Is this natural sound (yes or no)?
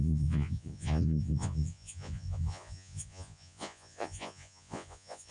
no